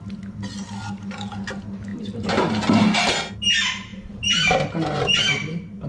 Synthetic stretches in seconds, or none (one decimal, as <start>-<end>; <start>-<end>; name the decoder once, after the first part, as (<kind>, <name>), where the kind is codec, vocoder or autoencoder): 3.9-5.3 (vocoder, BigVGAN v2)